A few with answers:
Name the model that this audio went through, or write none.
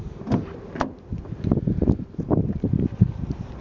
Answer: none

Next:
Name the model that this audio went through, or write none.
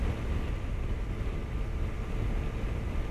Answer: none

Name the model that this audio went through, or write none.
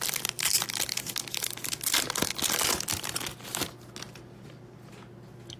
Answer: none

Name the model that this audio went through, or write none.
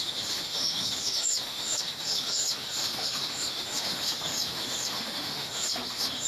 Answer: autoencoder, DAC-VAE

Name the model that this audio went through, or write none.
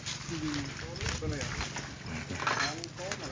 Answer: none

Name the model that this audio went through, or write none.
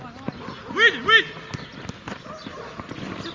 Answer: none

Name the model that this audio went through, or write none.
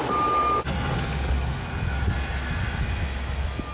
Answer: none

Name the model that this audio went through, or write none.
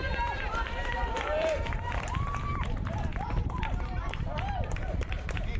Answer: vocoder, BigVGAN v2